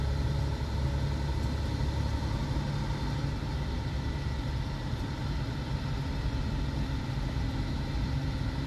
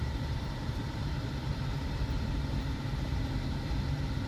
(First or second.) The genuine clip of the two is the first